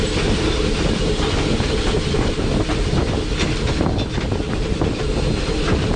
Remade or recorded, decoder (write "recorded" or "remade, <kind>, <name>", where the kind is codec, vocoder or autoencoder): recorded